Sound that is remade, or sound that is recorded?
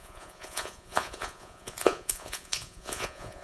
remade